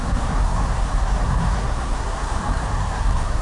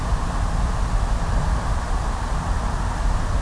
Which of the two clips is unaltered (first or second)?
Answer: second